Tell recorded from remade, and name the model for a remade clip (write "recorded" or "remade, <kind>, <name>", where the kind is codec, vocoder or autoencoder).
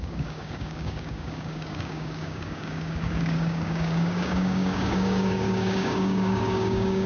remade, codec, DAC